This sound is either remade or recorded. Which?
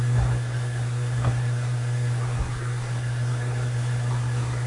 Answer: remade